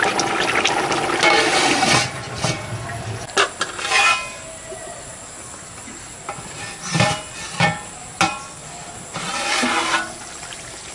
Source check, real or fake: fake